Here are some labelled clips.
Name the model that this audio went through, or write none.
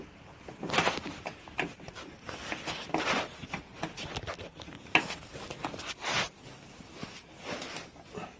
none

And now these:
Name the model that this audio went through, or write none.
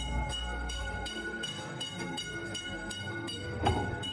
codec, SNAC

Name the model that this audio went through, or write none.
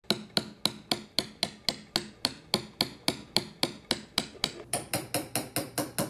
none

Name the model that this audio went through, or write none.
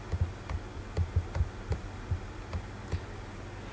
none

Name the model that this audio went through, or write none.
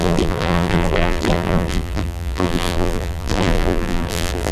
vocoder, BigVGAN v2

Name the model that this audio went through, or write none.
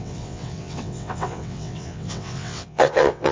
vocoder, WaveNeXt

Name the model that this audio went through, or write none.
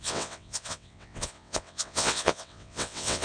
vocoder, WaveNeXt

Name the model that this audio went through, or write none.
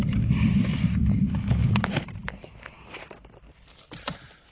vocoder, BigVGAN v2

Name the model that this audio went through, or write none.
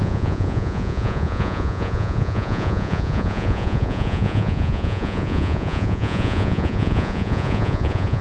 vocoder, Vocos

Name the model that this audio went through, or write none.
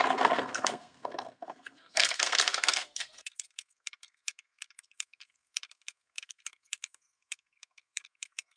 codec, SNAC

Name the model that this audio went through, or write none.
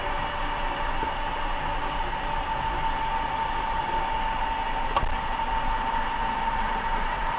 none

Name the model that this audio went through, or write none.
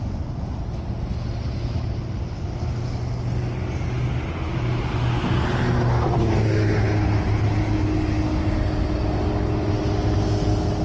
none